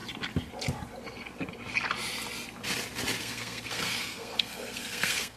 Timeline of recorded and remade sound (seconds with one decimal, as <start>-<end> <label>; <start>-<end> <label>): 0.0-3.2 recorded; 3.2-5.4 remade

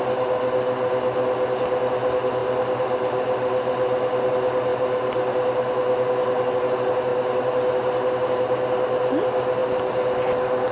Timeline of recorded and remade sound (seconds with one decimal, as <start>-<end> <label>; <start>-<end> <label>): 0.0-2.4 recorded; 2.4-4.3 remade; 4.3-4.7 recorded; 4.7-5.3 remade; 5.3-9.6 recorded; 9.6-10.7 remade

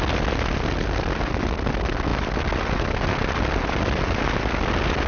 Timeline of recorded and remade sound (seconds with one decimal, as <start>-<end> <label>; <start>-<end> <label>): 0.0-5.1 recorded

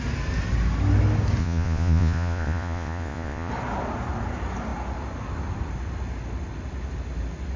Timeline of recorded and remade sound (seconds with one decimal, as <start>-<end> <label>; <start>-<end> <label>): 0.0-1.4 recorded; 1.4-3.5 remade; 3.5-7.6 recorded

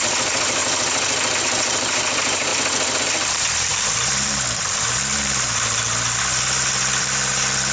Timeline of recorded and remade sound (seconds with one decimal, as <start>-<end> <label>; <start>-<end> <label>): 0.0-0.6 remade; 0.6-1.4 recorded; 1.4-2.5 remade; 2.5-3.0 recorded; 3.0-7.7 remade

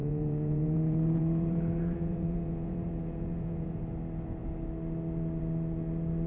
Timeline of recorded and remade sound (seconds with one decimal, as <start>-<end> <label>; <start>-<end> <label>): 0.0-3.8 remade; 3.8-6.3 recorded

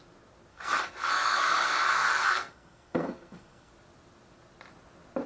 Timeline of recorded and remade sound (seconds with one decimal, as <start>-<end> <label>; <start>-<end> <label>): 0.0-0.5 recorded; 0.5-3.7 remade; 3.7-5.3 recorded